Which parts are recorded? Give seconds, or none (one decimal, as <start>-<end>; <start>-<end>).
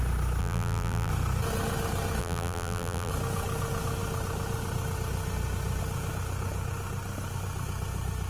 0.0-0.4; 1.1-2.2; 3.1-8.3